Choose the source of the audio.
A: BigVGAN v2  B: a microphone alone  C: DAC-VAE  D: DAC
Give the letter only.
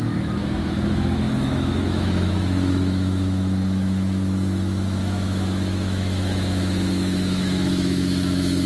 C